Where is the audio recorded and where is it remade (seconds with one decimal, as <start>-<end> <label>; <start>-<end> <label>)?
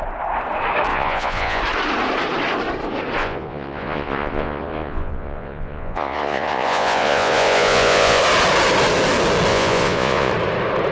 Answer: 0.0-0.9 recorded; 0.9-1.6 remade; 1.6-3.2 recorded; 3.2-8.2 remade; 8.2-9.5 recorded; 9.5-10.3 remade; 10.3-10.9 recorded